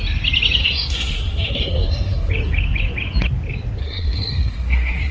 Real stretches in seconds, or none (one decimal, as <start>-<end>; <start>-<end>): 0.0-0.6; 2.3-3.8